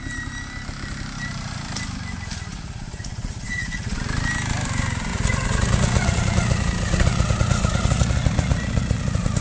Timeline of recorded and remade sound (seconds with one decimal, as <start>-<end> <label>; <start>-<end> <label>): 0.0-2.5 recorded; 2.5-4.0 remade; 4.0-5.1 recorded; 5.1-9.4 remade